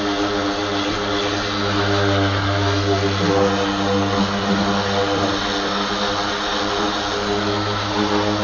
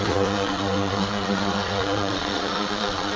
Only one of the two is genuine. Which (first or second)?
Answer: first